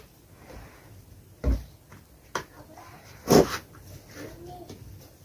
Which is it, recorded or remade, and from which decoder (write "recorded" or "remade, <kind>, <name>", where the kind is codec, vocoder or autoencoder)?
recorded